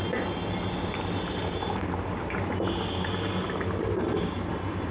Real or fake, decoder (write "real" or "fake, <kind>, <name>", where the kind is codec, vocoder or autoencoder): real